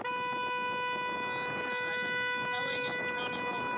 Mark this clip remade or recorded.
recorded